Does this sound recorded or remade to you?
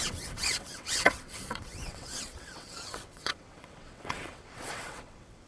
remade